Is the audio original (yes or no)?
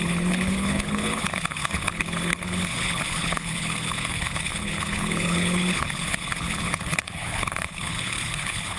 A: no